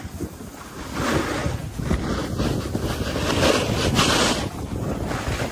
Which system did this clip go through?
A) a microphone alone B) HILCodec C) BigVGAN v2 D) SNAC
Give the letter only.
A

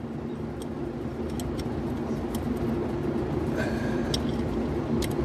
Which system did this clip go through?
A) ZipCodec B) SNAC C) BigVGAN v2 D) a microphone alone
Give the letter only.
D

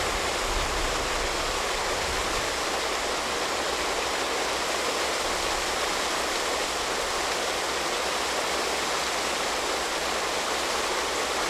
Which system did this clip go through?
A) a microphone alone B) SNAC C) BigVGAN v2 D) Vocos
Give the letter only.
A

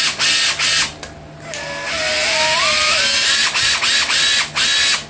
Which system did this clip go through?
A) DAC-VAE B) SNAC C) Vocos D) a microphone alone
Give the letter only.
D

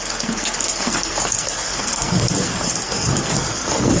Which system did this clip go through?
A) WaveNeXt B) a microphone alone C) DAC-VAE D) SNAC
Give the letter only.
D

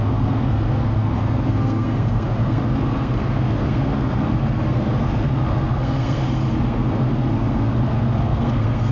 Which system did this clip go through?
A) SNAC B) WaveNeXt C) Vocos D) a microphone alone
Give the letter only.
A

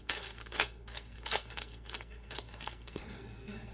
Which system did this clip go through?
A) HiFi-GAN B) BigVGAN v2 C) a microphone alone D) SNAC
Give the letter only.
D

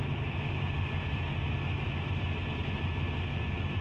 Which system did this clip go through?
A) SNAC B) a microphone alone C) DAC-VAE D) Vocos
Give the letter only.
B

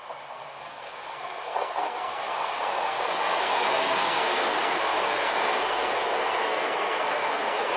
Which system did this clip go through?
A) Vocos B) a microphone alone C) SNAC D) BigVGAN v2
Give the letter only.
C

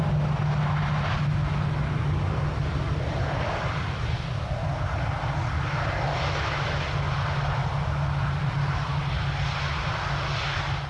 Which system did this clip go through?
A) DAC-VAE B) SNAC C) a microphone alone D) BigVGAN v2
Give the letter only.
C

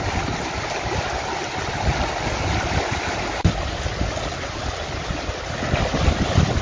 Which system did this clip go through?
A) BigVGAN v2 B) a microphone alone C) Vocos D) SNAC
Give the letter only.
B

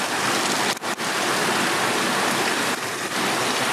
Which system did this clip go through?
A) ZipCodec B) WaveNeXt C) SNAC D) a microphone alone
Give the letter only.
D